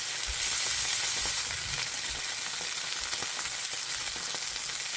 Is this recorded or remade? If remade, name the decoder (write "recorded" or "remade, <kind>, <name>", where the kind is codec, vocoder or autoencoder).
recorded